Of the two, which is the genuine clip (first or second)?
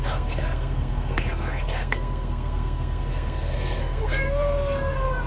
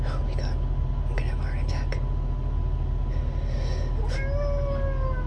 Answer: second